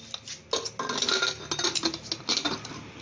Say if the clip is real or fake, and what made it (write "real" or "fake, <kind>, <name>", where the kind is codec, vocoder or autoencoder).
real